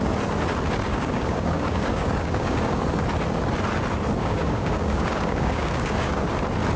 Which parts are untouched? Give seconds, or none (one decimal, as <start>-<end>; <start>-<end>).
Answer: 0.0-0.9; 2.8-4.2; 6.3-6.8